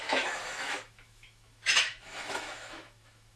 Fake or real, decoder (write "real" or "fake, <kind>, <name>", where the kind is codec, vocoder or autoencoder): fake, autoencoder, DAC-VAE